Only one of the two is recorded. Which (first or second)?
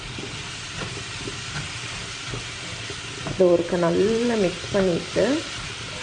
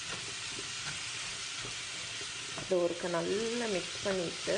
second